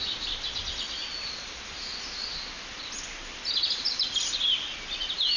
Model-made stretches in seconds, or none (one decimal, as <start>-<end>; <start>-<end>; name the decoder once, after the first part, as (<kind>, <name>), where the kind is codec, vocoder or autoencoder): none